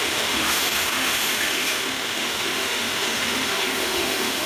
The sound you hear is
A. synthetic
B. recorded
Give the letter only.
A